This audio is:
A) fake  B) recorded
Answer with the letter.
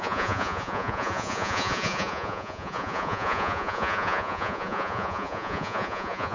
A